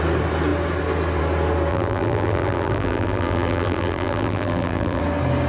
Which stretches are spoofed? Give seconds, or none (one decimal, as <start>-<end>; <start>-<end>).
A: 1.7-5.0